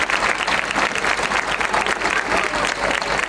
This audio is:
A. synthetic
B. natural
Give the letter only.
B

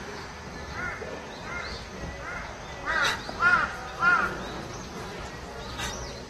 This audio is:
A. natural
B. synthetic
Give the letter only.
A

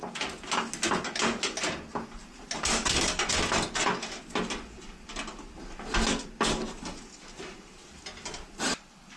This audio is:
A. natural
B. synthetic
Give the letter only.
A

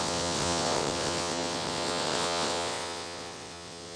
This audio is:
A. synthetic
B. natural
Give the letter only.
A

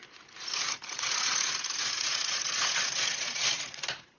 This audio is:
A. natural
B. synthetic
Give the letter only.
B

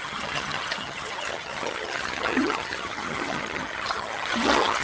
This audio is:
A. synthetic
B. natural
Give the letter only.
A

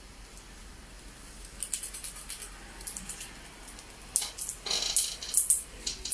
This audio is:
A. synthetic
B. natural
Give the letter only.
B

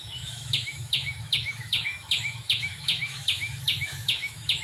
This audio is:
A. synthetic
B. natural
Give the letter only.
A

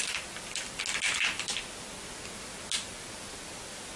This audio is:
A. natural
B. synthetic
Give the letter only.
A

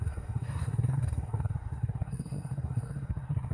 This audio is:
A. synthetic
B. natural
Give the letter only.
A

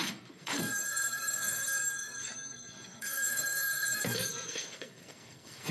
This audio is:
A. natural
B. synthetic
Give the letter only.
B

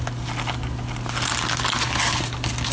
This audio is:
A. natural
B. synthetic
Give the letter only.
A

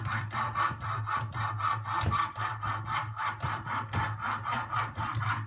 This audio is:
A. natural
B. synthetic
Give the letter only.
A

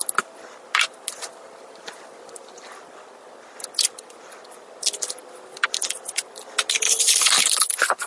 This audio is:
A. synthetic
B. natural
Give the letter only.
B